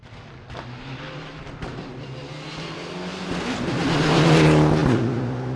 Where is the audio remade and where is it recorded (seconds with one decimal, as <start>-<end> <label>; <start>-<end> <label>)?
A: 0.0-5.6 recorded